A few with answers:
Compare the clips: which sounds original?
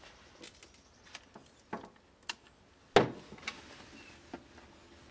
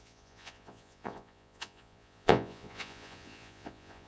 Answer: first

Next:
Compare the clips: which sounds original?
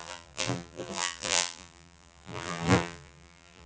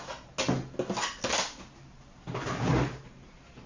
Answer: second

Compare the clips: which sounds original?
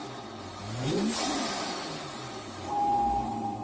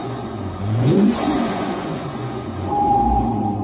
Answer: first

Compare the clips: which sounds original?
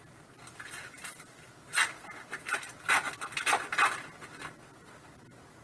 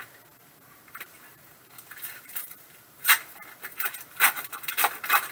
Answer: first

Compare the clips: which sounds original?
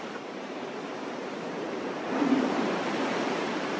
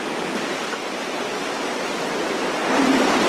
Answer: second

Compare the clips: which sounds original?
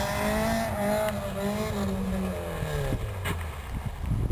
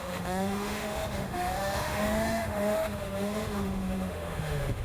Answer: first